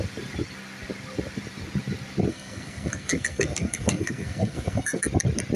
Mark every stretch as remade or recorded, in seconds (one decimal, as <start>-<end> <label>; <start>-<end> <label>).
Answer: 0.0-2.3 recorded; 2.3-5.0 remade; 5.0-5.6 recorded